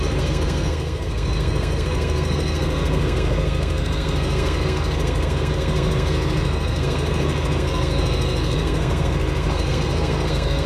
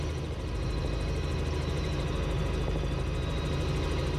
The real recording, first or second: second